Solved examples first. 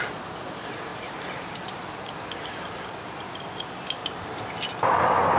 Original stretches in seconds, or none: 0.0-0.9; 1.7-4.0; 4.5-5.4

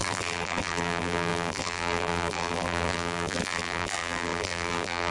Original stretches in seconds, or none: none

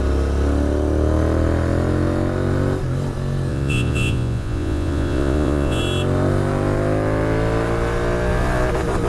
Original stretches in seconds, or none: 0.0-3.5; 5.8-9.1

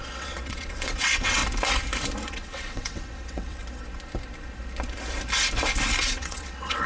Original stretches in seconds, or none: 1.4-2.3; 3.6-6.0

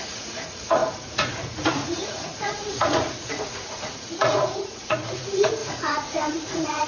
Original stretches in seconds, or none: none

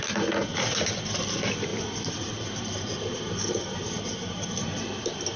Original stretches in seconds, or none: 0.0-5.4

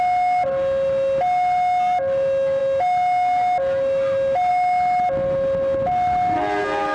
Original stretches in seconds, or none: 0.0-6.9